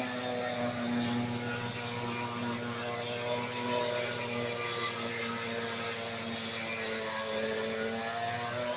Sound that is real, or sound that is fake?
real